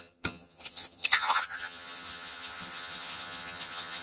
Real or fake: fake